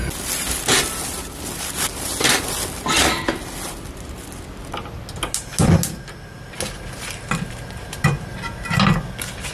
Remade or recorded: recorded